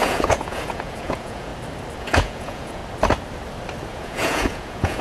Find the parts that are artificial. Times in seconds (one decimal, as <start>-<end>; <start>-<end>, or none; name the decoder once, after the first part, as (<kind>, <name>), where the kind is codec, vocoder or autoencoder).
0.0-1.5 (vocoder, Vocos); 2.0-2.8; 3.9-5.0